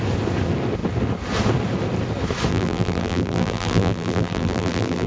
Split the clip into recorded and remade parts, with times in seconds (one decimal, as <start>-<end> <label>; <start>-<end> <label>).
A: 0.0-2.5 recorded; 2.5-5.1 remade